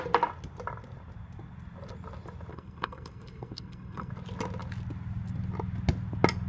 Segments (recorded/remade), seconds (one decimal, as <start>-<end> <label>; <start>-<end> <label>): 0.0-2.5 recorded; 2.5-4.1 remade; 4.1-6.5 recorded